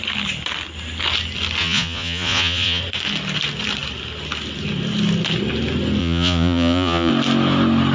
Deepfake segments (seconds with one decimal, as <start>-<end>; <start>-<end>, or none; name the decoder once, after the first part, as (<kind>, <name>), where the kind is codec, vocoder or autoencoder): 1.6-2.8 (vocoder, Vocos); 6.0-7.1

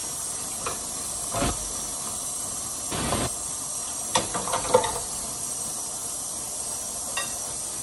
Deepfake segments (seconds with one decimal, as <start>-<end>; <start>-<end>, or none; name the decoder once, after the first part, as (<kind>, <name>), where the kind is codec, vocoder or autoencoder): 6.0-6.6 (vocoder, BigVGAN v2)

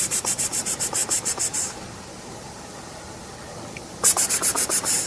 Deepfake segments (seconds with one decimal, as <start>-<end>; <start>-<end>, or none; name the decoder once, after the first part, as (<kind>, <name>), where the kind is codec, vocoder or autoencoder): 0.0-1.0 (vocoder, BigVGAN v2); 4.1-5.1

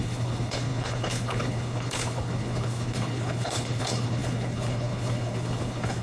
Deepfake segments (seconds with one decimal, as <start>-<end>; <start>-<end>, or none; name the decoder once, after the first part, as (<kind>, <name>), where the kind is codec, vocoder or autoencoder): 0.0-6.0 (codec, HILCodec)